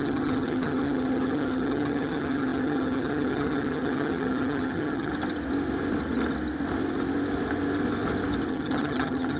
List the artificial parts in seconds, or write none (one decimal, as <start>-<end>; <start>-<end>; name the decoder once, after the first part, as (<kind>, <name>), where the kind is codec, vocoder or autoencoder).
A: 0.0-5.1 (vocoder, HiFi-GAN); 8.5-9.4